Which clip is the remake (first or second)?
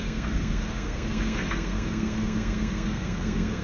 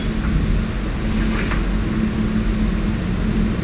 first